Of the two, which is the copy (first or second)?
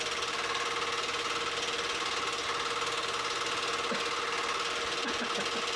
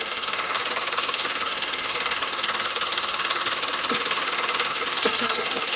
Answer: second